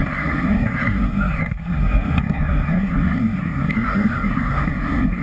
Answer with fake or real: fake